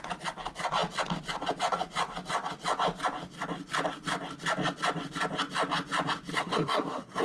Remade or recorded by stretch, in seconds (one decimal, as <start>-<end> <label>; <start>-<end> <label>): 0.0-6.3 recorded; 6.3-7.2 remade